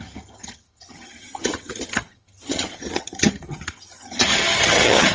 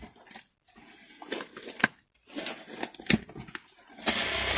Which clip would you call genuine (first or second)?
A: second